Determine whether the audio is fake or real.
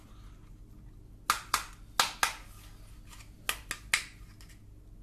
real